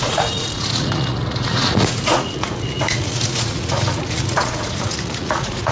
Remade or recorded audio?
remade